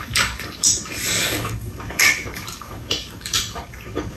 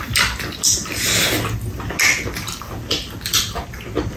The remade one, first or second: first